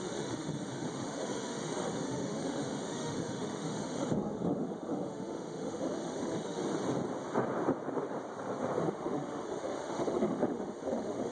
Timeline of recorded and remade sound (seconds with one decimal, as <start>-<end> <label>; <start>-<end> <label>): 0.0-6.6 remade; 6.6-8.8 recorded; 8.8-11.3 remade

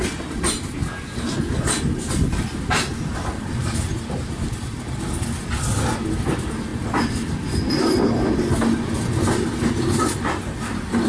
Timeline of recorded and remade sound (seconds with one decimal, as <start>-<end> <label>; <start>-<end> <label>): 0.0-11.1 recorded

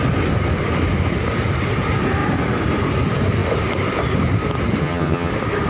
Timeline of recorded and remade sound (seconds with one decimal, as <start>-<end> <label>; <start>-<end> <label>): 0.0-4.8 recorded; 4.8-5.3 remade; 5.3-5.7 recorded